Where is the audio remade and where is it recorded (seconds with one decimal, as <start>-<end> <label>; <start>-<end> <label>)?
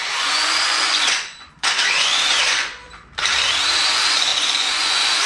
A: 0.0-2.8 remade; 2.8-3.9 recorded; 3.9-5.3 remade